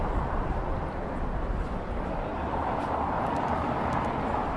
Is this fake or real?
real